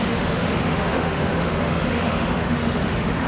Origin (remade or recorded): remade